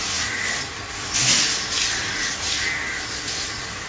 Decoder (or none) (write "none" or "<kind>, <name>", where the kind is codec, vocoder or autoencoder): none